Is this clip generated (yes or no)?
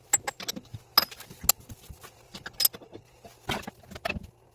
no